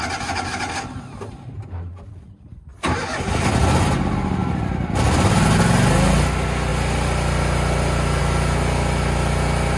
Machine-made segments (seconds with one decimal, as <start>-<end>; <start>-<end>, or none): none